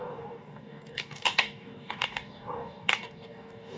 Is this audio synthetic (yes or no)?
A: yes